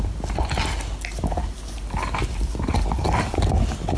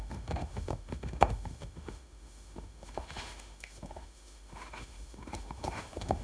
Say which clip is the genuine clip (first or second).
first